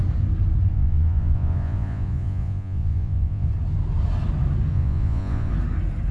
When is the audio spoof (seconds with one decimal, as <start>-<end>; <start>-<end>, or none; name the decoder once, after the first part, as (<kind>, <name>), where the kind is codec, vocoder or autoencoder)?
0.7-3.5 (vocoder, Vocos); 4.7-5.5